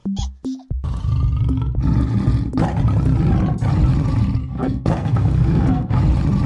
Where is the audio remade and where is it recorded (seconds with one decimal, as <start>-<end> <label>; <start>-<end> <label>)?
0.0-4.4 recorded; 4.4-6.0 remade; 6.0-6.5 recorded